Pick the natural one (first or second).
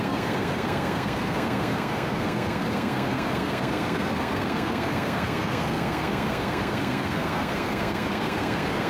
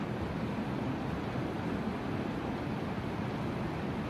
second